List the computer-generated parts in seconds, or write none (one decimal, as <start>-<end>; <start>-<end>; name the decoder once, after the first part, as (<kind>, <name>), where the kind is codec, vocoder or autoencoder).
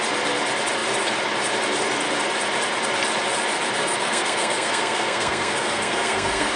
3.8-6.6 (codec, SNAC)